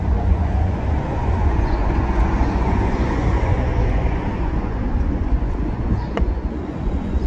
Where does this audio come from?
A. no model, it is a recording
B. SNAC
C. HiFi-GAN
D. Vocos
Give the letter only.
D